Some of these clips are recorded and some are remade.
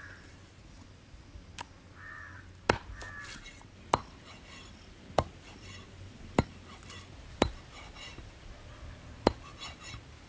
recorded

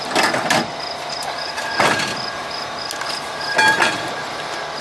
recorded